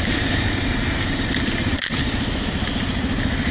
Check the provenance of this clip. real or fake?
real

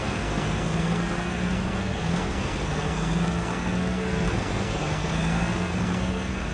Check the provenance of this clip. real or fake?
fake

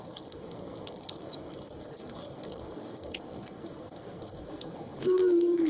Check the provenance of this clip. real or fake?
fake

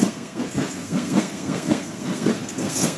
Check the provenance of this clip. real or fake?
fake